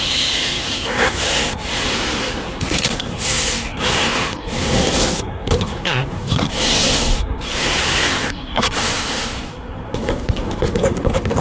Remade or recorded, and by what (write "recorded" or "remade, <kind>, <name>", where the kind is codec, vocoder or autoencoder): remade, codec, SNAC